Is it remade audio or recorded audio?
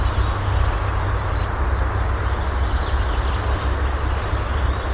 recorded